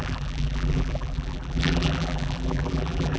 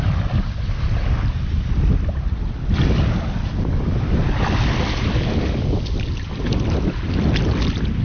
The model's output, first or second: first